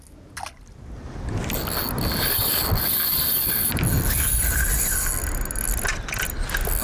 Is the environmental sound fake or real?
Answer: real